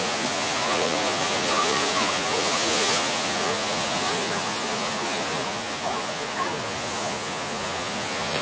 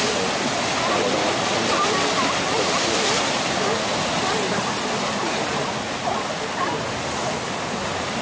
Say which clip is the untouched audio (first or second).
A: second